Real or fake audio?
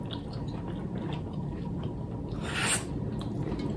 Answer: real